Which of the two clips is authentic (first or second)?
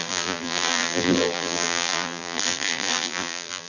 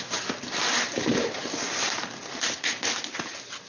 second